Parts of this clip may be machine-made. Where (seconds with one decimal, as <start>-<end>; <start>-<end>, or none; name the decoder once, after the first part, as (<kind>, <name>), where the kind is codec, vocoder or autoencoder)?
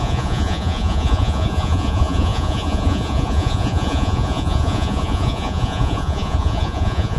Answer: 0.0-7.2 (vocoder, Vocos)